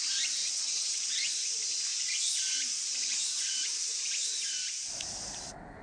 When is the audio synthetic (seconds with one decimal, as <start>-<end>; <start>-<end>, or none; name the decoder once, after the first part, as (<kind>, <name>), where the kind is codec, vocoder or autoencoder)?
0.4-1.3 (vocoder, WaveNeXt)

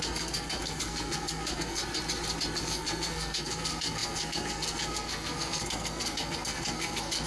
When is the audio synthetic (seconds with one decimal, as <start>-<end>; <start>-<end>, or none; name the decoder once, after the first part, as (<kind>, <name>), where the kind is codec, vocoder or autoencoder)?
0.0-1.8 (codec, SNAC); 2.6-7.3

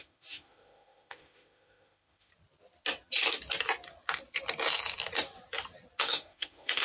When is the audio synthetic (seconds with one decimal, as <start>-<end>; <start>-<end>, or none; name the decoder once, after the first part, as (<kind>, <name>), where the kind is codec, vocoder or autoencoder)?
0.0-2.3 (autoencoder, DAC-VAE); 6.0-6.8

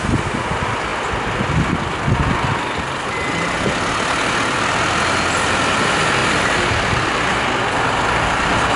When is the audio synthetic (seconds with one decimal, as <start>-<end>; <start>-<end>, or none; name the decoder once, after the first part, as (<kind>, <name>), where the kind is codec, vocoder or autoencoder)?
6.2-7.3 (vocoder, BigVGAN v2)

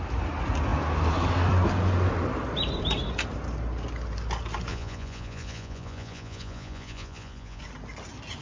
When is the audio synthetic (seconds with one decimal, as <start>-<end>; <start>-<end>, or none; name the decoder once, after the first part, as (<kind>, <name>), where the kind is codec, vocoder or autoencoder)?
4.7-7.6 (vocoder, Vocos)

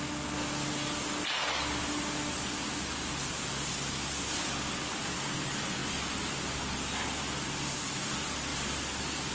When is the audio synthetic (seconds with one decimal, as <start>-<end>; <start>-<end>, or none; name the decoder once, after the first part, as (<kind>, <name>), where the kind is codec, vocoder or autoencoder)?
none